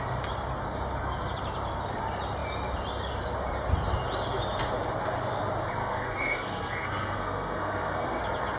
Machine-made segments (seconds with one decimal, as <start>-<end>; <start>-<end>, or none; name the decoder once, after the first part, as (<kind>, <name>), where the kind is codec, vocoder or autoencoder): 5.8-8.2 (codec, SNAC)